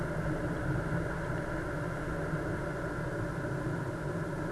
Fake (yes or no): no